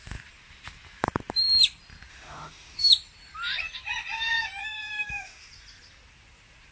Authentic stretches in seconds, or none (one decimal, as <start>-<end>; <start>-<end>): 0.0-2.1; 2.8-4.6; 5.5-6.7